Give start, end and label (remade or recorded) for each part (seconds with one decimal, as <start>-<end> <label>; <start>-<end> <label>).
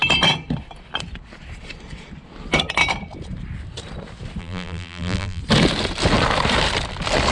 0.0-4.4 recorded; 4.4-5.4 remade; 5.4-7.3 recorded